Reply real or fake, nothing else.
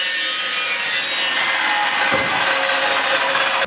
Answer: real